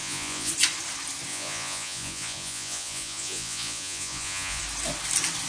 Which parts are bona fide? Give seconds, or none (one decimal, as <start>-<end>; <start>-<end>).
0.5-1.3; 4.6-5.5